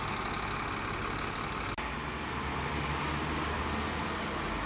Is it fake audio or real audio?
real